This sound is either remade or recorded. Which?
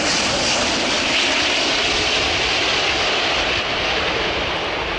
recorded